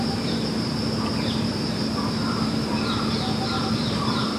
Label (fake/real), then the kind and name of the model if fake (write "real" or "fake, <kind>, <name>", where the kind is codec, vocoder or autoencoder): fake, vocoder, BigVGAN v2